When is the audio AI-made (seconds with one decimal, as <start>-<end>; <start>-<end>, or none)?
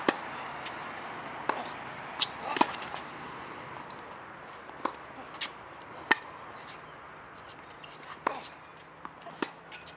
none